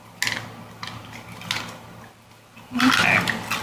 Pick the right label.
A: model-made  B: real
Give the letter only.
B